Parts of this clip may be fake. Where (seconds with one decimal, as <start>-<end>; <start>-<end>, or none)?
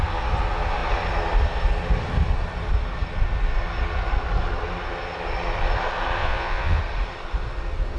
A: 6.2-6.8